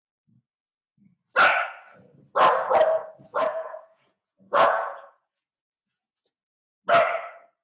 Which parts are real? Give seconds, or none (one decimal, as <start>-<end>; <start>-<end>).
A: 0.0-3.3; 6.5-7.6